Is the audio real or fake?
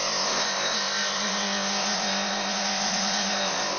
fake